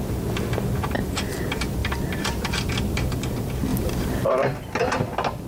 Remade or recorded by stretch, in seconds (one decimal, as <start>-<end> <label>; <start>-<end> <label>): 0.0-1.8 recorded; 1.8-2.7 remade; 2.7-5.5 recorded